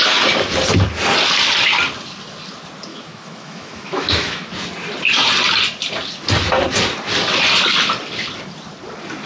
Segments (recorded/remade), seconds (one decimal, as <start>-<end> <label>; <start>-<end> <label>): 0.0-2.9 recorded; 2.9-4.5 remade; 4.5-9.3 recorded